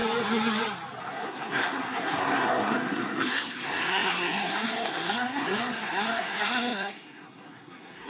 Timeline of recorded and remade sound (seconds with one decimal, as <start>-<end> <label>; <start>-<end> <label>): 0.0-1.0 recorded; 1.0-8.1 remade